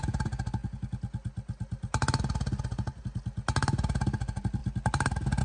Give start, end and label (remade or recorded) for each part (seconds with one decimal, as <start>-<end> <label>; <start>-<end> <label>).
0.0-5.4 recorded